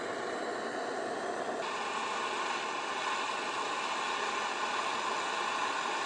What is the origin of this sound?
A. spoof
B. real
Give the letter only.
B